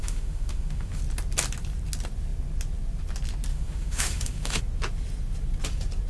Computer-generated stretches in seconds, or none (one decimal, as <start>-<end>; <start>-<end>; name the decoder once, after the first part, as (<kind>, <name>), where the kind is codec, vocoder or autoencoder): 0.0-1.0 (autoencoder, DAC-VAE); 3.5-4.6

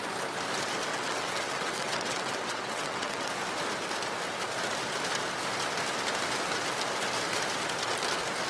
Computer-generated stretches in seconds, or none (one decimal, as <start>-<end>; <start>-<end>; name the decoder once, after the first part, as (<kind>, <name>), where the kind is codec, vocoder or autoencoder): 0.9-3.3 (vocoder, WaveNeXt)

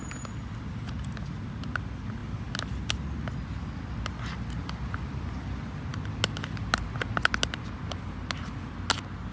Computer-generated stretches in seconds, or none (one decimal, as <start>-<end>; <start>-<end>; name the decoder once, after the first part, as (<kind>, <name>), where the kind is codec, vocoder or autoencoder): none

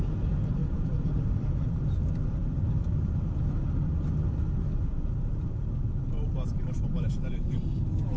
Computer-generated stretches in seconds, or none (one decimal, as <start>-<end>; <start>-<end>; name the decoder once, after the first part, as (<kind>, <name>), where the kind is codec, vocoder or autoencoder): 0.6-3.6 (vocoder, BigVGAN v2); 4.9-8.2

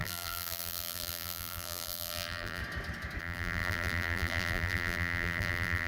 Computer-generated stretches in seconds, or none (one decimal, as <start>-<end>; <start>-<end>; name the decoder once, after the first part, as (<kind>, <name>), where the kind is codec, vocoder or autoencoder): 0.0-2.6 (vocoder, BigVGAN v2); 3.2-5.9